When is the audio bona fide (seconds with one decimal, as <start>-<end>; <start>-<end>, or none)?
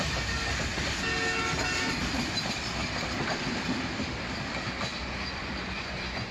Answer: 0.0-5.4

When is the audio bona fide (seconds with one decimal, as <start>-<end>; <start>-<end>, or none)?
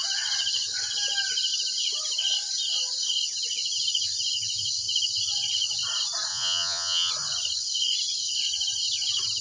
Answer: 0.0-6.3; 7.1-9.4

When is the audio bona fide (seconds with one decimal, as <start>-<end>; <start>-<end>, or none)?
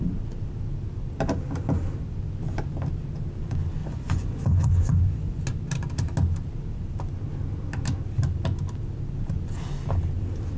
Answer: 0.0-3.8; 5.4-10.6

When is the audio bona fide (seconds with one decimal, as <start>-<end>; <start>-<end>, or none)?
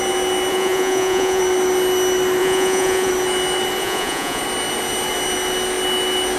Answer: 0.0-0.5; 1.4-2.4; 3.1-3.8; 4.4-6.4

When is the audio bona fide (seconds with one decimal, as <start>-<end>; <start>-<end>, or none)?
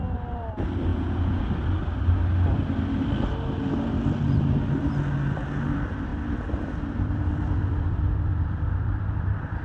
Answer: 0.0-0.9; 1.4-9.6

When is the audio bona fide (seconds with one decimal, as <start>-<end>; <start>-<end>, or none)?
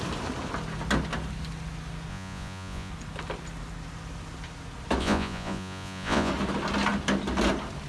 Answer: 0.0-2.1; 2.9-5.0; 6.3-7.9